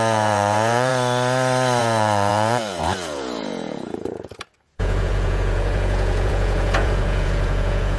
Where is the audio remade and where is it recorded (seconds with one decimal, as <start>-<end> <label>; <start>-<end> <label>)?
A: 0.0-0.9 remade; 0.9-1.8 recorded; 1.8-8.0 remade